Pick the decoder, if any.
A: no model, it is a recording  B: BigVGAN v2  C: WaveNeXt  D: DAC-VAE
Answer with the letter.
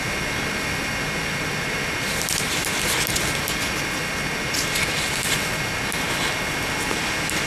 A